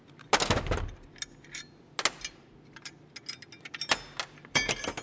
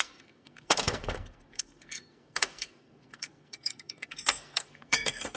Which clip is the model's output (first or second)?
second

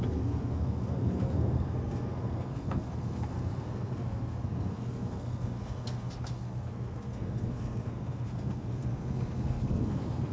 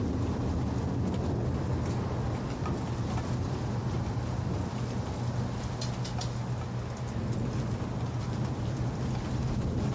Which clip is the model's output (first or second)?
first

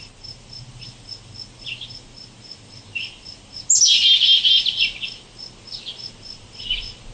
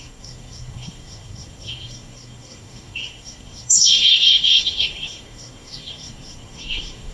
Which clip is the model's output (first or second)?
second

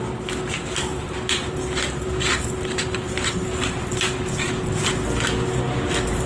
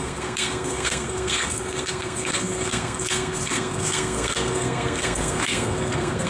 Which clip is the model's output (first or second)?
second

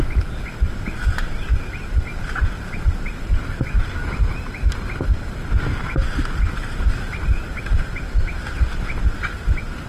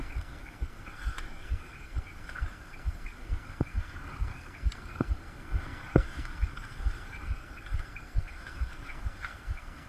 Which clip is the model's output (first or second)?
second